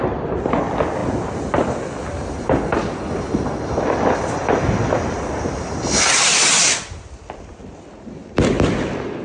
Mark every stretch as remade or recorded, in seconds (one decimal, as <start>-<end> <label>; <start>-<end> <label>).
0.0-9.2 recorded